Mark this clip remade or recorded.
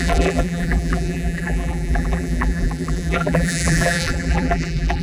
remade